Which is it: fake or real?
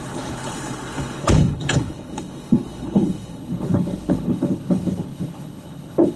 fake